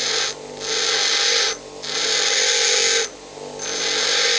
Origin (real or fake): real